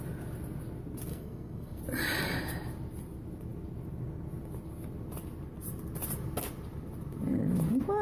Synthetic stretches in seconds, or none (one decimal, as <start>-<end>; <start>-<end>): 1.1-1.8